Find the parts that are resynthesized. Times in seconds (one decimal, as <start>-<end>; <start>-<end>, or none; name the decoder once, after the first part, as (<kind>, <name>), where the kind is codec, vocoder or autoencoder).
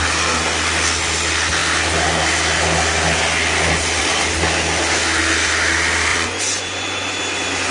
6.1-7.2 (vocoder, Vocos)